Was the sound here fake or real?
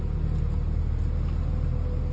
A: real